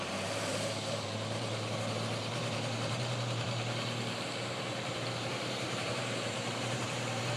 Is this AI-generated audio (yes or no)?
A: yes